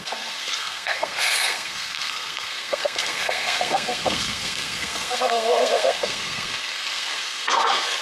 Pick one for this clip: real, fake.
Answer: fake